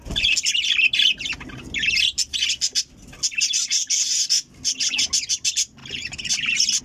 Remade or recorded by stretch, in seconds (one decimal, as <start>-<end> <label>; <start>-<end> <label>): 0.0-5.8 recorded; 5.8-6.8 remade